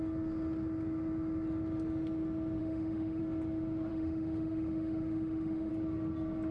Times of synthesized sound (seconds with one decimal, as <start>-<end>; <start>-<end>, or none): 2.6-3.2; 3.9-5.7

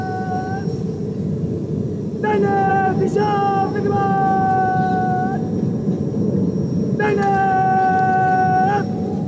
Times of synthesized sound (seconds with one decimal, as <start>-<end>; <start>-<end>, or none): none

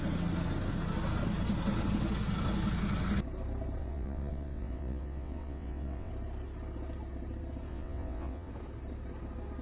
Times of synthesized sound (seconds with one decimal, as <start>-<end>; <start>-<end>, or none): 3.8-6.1; 7.7-8.5

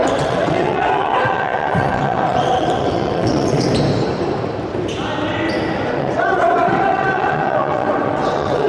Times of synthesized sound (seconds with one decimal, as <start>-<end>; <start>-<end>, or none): 0.0-3.7; 5.9-8.7